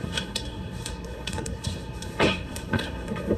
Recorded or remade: remade